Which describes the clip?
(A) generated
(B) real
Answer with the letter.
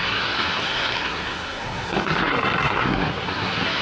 A